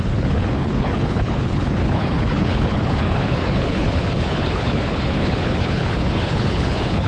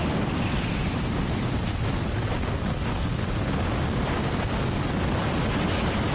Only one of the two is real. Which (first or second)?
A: second